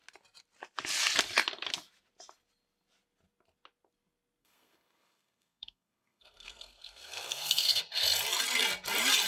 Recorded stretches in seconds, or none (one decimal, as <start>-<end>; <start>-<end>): 0.0-4.4; 7.8-9.3